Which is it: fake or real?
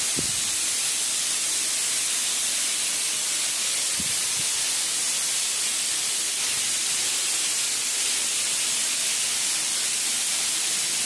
real